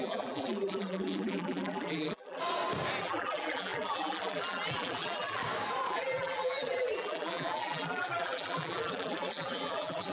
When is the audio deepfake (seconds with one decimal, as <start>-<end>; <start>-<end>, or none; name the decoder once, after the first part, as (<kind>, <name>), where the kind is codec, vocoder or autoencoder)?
0.0-2.4 (vocoder, BigVGAN v2); 3.0-5.4; 5.9-10.1